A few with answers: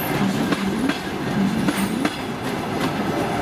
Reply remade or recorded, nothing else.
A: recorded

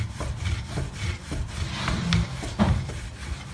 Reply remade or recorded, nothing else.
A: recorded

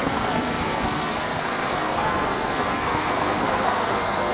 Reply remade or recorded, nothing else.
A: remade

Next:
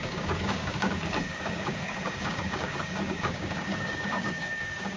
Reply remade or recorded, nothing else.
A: remade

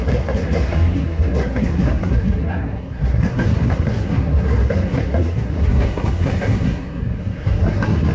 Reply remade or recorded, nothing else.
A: remade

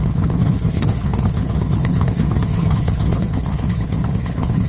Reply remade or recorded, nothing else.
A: remade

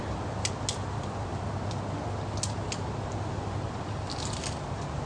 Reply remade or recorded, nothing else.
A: recorded